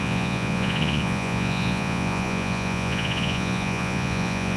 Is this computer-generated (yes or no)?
yes